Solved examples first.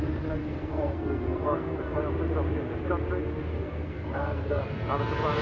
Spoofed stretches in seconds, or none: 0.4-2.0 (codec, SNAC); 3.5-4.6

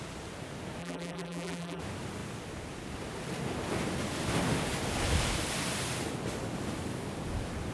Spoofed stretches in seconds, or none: 0.8-1.8 (vocoder, BigVGAN v2)